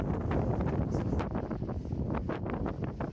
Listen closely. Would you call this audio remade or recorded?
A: recorded